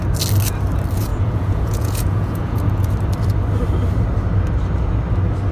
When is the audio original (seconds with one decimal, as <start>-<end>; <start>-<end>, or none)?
0.0-1.1; 2.9-5.5